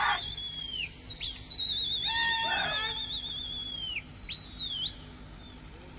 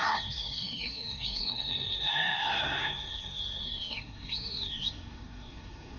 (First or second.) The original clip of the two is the first